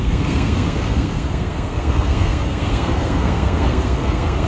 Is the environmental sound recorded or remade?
remade